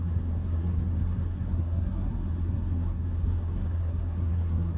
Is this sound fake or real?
fake